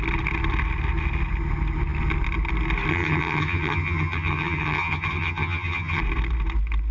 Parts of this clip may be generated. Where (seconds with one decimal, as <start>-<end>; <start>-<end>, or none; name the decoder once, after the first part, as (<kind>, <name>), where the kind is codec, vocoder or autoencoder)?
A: 2.9-6.0 (vocoder, HiFi-GAN)